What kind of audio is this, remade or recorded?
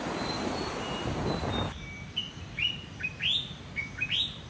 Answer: recorded